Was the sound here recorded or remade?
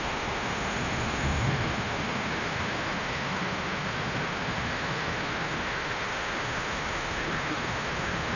remade